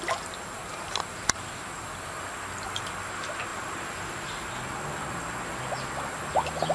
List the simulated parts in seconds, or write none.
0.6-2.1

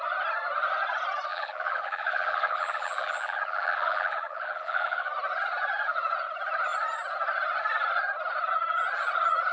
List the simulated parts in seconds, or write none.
1.3-5.1